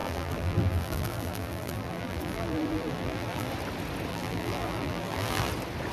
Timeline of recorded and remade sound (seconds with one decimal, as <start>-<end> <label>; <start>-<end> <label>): 0.0-3.5 remade; 3.5-4.1 recorded; 4.1-5.5 remade; 5.5-5.9 recorded